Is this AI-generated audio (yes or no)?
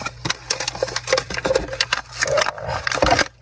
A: no